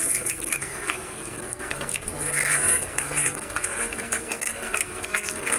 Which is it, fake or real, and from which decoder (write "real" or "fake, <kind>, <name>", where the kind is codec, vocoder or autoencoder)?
fake, codec, SNAC